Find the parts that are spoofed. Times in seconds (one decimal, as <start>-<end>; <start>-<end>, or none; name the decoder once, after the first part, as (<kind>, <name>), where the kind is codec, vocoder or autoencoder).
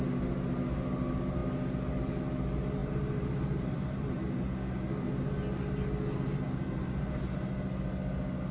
2.8-4.1 (vocoder, BigVGAN v2)